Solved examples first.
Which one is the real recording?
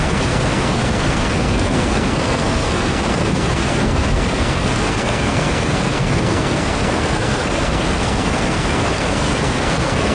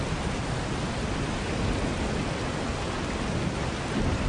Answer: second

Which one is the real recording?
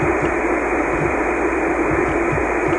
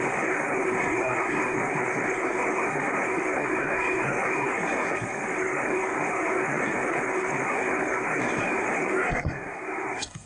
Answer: first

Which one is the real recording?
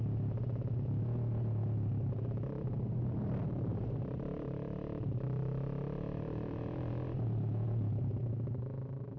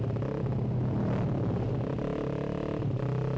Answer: second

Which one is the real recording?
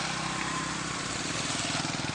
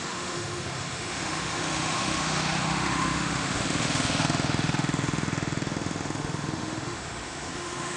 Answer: first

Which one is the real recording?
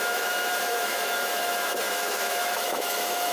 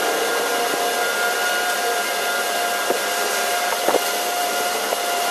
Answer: second